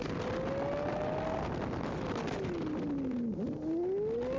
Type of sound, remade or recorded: recorded